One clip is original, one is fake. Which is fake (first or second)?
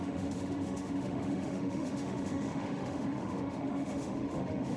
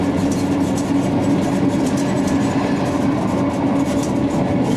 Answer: first